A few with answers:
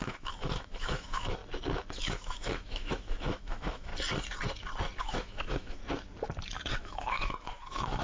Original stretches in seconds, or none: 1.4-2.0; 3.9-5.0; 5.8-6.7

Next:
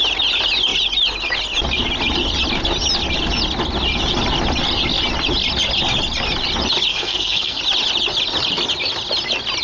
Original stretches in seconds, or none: 0.0-6.9; 7.6-9.6

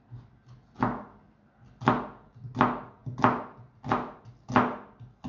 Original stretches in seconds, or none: 0.0-5.3

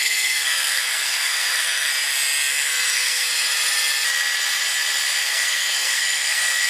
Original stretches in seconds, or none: 1.9-2.5; 3.3-5.2

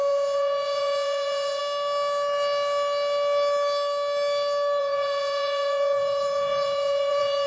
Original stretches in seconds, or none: 1.6-4.8